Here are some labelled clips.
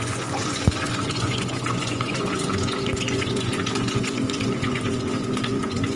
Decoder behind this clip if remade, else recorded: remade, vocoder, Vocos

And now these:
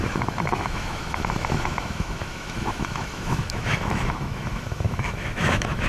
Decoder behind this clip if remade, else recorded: remade, autoencoder, DAC-VAE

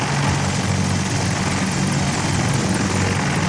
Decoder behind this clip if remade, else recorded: recorded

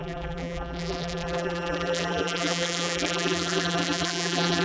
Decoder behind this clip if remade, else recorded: remade, vocoder, BigVGAN v2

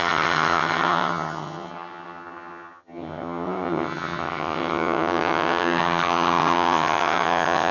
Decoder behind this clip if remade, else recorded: remade, vocoder, HiFi-GAN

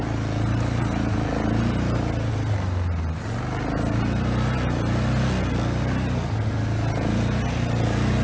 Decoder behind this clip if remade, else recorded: recorded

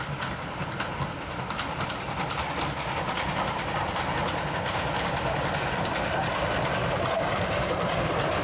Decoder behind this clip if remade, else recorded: recorded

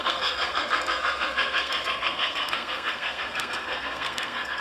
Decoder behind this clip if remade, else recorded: remade, codec, SNAC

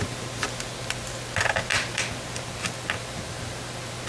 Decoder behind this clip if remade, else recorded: recorded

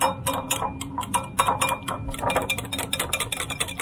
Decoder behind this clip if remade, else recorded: recorded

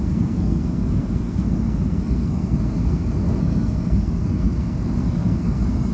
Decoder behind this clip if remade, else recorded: remade, codec, SNAC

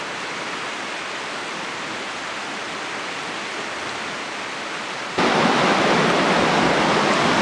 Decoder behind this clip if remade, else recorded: recorded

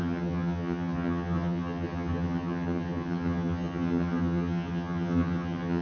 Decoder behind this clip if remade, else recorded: remade, vocoder, HiFi-GAN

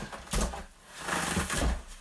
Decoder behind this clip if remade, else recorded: recorded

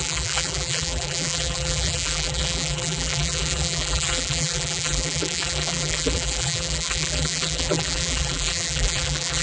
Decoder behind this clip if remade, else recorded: remade, vocoder, BigVGAN v2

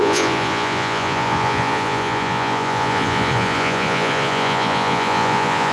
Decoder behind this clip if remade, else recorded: remade, vocoder, Vocos